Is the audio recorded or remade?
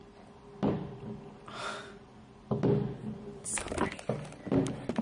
recorded